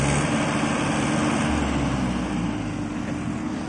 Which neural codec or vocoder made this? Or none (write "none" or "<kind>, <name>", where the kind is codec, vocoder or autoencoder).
none